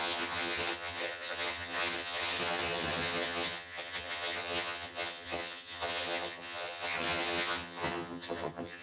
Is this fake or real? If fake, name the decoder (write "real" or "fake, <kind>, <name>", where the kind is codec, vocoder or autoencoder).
fake, vocoder, HiFi-GAN